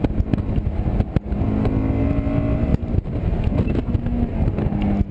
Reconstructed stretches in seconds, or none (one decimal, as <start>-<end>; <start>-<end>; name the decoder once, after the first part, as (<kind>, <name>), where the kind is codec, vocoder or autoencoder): none